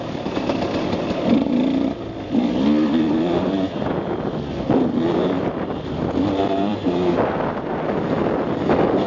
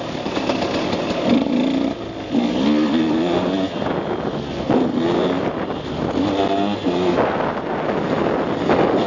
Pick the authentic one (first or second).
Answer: second